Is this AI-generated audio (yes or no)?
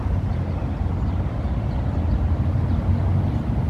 no